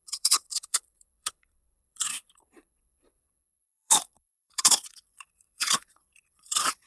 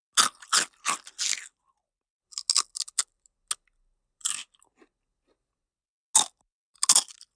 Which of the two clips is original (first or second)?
second